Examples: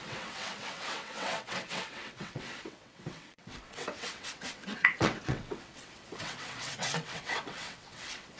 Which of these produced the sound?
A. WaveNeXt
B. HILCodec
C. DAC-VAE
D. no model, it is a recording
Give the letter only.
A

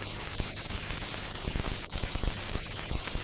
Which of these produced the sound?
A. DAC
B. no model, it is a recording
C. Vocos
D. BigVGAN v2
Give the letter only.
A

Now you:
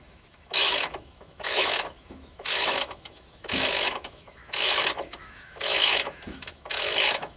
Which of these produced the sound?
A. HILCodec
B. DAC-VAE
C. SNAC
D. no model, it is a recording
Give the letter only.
B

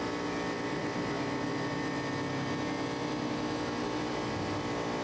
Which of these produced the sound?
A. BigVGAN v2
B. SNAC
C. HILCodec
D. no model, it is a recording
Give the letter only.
A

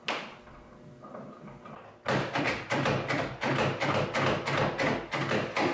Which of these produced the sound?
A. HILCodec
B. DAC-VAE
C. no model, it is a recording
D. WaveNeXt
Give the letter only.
C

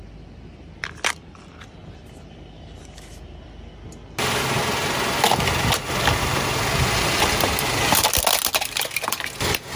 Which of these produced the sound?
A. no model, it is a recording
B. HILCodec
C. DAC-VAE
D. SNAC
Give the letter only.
A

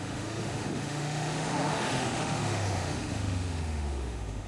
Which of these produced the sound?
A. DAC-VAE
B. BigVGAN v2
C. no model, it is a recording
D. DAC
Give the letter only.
A